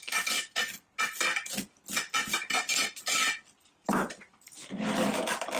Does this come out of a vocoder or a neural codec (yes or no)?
no